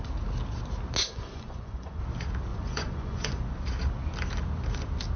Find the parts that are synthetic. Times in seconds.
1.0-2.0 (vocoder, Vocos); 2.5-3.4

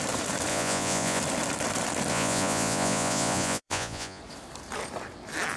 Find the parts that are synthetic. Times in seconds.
0.5-1.2 (vocoder, Vocos); 2.1-4.2